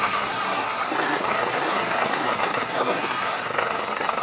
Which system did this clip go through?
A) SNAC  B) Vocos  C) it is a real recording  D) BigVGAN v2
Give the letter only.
A